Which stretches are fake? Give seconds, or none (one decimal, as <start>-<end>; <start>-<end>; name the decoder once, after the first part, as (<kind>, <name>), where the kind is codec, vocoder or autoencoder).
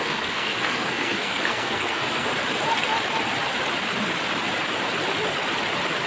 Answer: 0.0-2.3 (codec, SNAC)